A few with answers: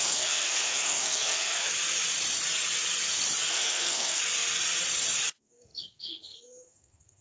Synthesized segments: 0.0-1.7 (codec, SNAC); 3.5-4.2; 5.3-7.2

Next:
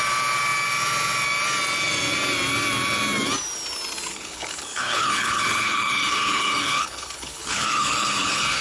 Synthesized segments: 4.1-8.6 (codec, HILCodec)

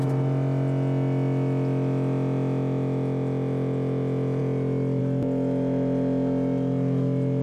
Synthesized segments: none

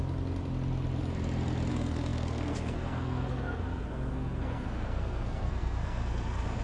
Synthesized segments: 1.7-6.6 (codec, SNAC)

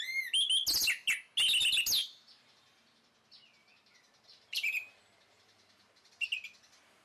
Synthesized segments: 2.0-2.7 (vocoder, BigVGAN v2); 3.6-6.1